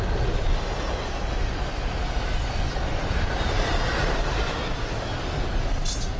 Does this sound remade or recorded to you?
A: recorded